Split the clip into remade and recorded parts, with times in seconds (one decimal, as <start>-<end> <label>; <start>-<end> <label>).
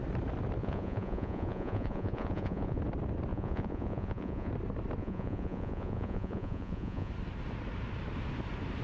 0.0-0.6 recorded; 0.6-2.8 remade; 2.8-3.3 recorded; 3.3-4.5 remade; 4.5-5.0 recorded; 5.0-7.1 remade; 7.1-8.8 recorded